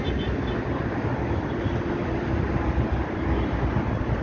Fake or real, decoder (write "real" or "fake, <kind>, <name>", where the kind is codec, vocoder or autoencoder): real